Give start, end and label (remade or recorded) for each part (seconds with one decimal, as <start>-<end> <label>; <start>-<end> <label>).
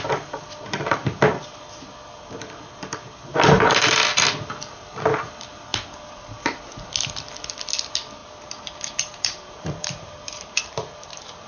0.0-8.2 recorded; 8.2-11.5 remade